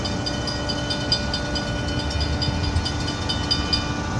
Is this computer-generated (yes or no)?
no